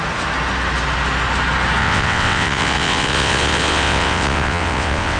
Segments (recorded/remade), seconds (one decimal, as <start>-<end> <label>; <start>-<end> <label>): 0.0-1.8 recorded; 1.8-5.2 remade